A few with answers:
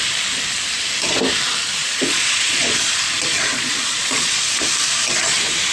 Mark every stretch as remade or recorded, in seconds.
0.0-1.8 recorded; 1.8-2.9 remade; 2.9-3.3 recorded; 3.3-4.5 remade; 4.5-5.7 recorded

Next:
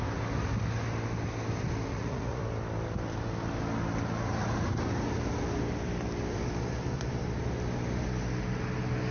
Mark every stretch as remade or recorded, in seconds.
0.0-1.9 recorded; 1.9-2.4 remade; 2.4-9.1 recorded

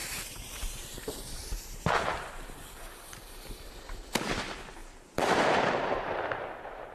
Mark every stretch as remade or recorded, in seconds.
0.0-3.7 remade; 3.7-4.8 recorded; 4.8-6.2 remade; 6.2-6.9 recorded